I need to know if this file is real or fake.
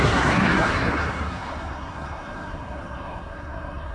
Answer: fake